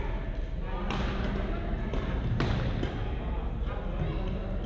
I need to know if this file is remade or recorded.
recorded